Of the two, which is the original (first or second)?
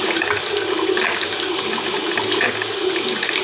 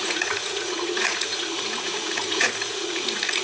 first